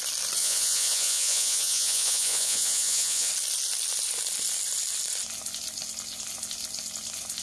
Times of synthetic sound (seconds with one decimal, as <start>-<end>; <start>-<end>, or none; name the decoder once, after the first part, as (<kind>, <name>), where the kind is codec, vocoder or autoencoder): 0.4-3.3 (vocoder, Vocos)